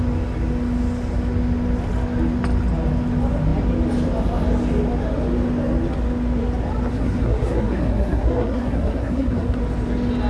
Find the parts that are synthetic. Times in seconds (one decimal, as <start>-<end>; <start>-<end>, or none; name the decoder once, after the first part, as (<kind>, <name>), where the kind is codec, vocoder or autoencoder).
6.9-9.6 (codec, SNAC)